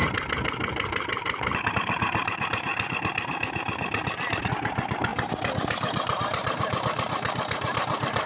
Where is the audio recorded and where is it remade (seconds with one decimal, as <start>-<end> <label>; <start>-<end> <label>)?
0.0-1.7 recorded; 1.7-2.7 remade; 2.7-4.4 recorded; 4.4-8.3 remade